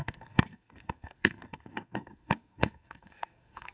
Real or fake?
fake